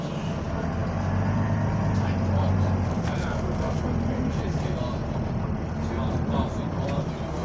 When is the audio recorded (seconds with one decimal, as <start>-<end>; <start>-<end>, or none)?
0.0-7.4